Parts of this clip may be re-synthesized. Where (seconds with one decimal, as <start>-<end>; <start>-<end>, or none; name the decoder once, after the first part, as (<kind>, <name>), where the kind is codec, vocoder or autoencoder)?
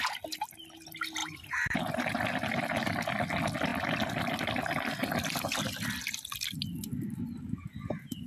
1.2-2.2 (vocoder, BigVGAN v2)